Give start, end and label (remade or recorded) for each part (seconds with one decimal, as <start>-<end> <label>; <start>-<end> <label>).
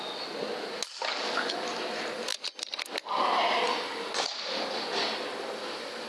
0.0-6.1 recorded